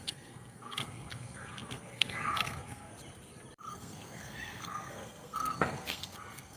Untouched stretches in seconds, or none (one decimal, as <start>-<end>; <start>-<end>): 2.9-3.7